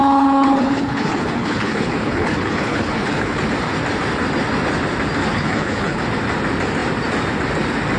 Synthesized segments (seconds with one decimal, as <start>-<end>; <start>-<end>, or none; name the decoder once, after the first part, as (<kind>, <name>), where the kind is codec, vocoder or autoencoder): 0.0-3.4 (codec, HILCodec); 5.2-6.0